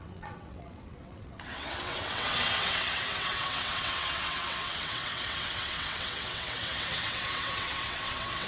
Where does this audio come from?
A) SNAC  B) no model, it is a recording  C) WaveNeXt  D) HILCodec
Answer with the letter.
C